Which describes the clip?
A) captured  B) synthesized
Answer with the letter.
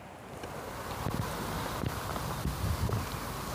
A